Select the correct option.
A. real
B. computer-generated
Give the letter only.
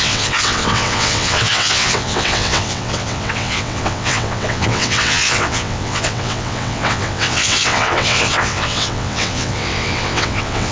B